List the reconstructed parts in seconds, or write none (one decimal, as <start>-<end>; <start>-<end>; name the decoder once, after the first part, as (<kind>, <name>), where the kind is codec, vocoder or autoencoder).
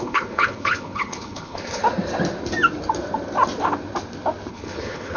0.0-1.8 (codec, HILCodec); 4.5-5.2